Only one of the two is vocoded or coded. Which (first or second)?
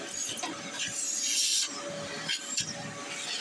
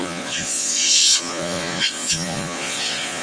second